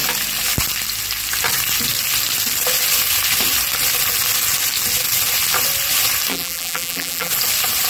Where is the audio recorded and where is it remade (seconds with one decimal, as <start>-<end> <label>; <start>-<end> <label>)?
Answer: 0.0-6.3 recorded; 6.3-7.3 remade; 7.3-7.9 recorded